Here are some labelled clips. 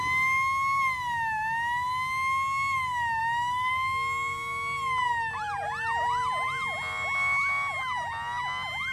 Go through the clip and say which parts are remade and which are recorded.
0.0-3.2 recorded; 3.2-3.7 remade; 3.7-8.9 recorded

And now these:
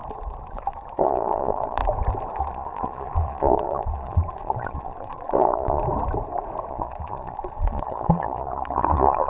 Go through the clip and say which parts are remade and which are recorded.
0.0-0.5 recorded; 0.5-1.8 remade; 1.8-2.4 recorded; 2.4-5.8 remade; 5.8-6.7 recorded; 6.7-9.3 remade

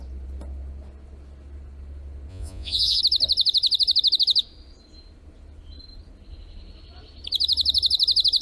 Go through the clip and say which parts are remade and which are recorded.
0.0-2.3 recorded; 2.3-3.0 remade; 3.0-8.4 recorded

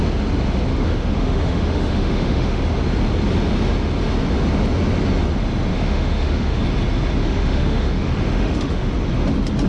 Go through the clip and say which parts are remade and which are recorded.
0.0-0.7 recorded; 0.7-2.6 remade; 2.6-5.7 recorded; 5.7-6.6 remade; 6.6-7.2 recorded; 7.2-8.9 remade; 8.9-9.7 recorded

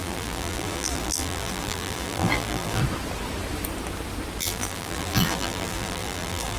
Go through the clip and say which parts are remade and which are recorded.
0.0-2.8 remade; 2.8-4.4 recorded; 4.4-6.6 remade

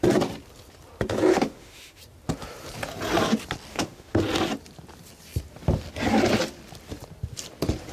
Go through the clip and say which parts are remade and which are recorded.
0.0-1.3 recorded; 1.3-2.0 remade; 2.0-3.7 recorded; 3.7-4.2 remade; 4.2-7.9 recorded